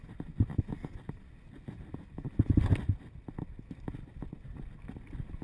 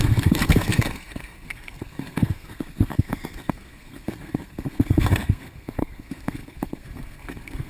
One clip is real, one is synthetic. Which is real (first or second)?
first